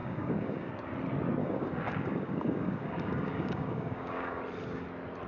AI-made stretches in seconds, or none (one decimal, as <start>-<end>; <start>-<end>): 0.0-0.7; 1.4-4.4